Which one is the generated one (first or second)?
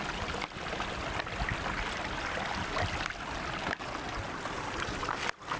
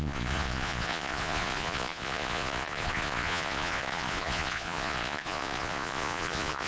second